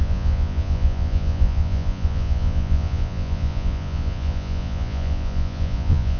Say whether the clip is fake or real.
fake